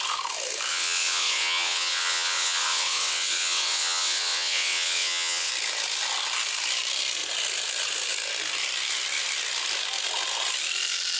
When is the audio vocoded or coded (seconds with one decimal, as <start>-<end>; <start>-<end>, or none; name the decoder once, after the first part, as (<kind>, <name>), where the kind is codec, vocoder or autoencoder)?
0.7-5.5 (vocoder, WaveNeXt)